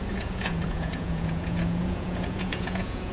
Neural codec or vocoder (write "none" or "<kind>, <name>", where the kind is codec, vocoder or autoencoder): vocoder, Vocos